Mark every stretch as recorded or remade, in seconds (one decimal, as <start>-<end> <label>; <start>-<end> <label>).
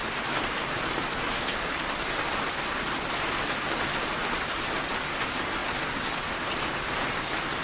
0.0-7.6 recorded